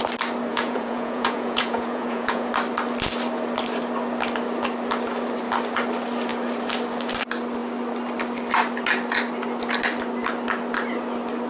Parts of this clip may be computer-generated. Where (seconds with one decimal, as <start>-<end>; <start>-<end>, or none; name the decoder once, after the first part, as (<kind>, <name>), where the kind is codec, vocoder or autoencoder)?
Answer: 0.5-2.5 (vocoder, Vocos)